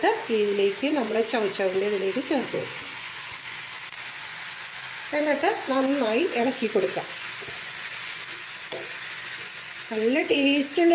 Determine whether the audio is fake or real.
fake